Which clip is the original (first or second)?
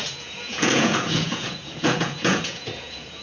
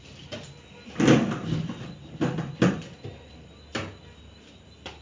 second